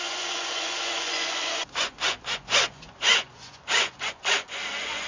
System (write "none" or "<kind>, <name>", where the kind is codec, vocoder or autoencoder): vocoder, Vocos